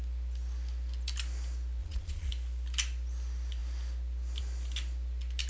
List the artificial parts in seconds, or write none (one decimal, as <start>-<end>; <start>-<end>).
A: 1.8-2.3